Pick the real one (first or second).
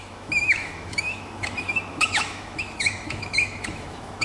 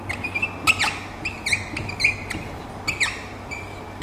second